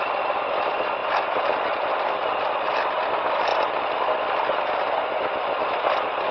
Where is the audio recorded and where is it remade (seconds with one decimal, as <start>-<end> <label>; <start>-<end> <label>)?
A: 0.0-6.3 recorded